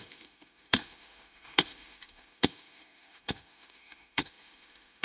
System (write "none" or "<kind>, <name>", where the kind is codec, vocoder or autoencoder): autoencoder, DAC-VAE